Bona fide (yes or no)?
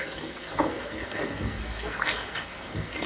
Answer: no